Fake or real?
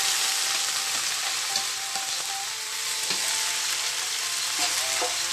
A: fake